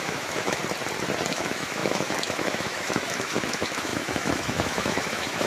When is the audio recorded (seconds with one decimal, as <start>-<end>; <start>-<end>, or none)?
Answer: 0.6-1.3